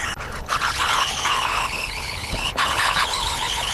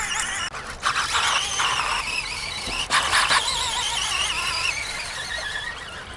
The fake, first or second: first